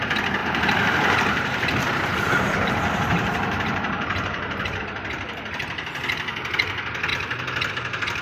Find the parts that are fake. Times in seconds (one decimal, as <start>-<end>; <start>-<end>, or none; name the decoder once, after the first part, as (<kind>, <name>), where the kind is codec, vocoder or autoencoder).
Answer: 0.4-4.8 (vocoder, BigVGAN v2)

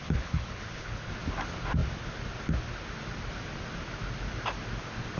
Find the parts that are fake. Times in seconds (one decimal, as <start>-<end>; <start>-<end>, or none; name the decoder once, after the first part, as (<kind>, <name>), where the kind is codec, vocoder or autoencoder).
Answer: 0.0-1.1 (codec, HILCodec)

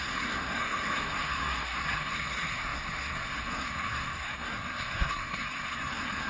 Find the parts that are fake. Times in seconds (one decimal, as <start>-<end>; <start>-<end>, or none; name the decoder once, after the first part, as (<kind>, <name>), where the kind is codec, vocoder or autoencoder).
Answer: 0.0-6.3 (codec, SNAC)

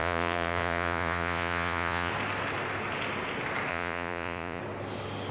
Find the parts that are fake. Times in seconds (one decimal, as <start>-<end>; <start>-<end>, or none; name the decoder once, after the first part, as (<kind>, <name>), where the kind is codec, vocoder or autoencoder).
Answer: 0.0-2.1 (vocoder, Vocos); 3.7-4.6

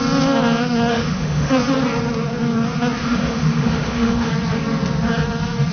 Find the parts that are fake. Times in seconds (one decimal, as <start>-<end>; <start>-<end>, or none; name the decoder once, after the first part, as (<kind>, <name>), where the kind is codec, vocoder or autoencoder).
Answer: 0.9-1.5 (autoencoder, DAC-VAE); 3.0-4.3